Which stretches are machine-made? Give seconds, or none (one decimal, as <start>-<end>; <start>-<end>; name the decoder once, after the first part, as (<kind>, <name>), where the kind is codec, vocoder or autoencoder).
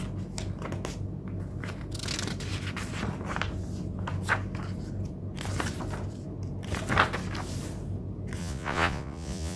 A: 8.4-9.6 (vocoder, Vocos)